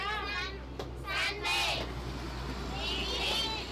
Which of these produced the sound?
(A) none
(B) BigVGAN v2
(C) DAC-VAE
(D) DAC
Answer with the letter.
A